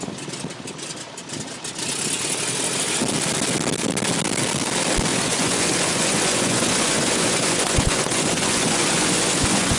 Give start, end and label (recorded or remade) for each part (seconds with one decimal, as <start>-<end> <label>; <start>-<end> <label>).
0.0-5.1 recorded; 5.1-9.8 remade